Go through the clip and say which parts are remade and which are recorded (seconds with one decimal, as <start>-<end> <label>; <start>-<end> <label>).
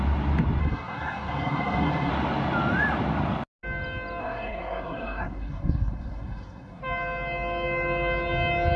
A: 0.0-0.6 recorded; 0.6-2.1 remade; 2.1-4.2 recorded; 4.2-6.8 remade; 6.8-8.8 recorded